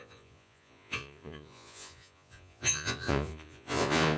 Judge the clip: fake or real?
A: fake